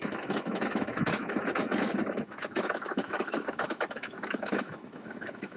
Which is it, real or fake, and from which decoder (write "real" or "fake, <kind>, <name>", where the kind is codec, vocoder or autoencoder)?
fake, autoencoder, DAC-VAE